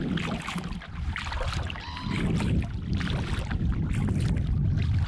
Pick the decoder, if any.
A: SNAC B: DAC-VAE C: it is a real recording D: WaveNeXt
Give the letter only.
C